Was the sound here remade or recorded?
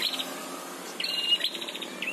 recorded